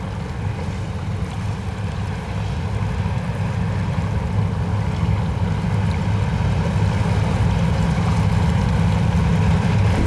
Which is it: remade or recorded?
recorded